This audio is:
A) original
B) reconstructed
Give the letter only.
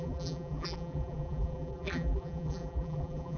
B